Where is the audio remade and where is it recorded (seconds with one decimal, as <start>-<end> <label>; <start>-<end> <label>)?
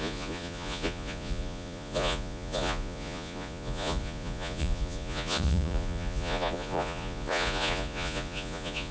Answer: 0.0-8.9 remade